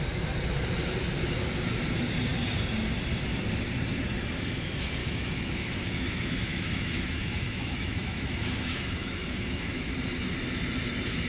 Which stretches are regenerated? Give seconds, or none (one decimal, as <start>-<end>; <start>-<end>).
5.0-9.9

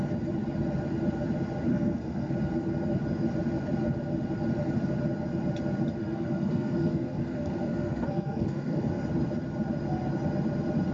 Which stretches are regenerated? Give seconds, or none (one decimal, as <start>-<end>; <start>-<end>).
1.7-2.3; 6.0-9.0